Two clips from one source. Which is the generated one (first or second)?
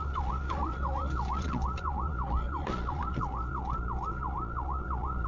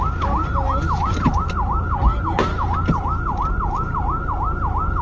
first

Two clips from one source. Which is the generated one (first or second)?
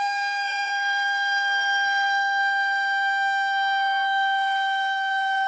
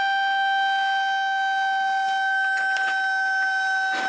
first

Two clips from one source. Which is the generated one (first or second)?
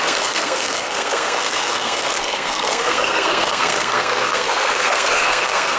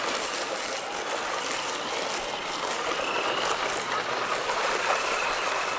first